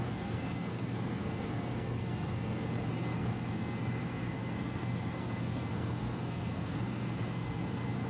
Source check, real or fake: fake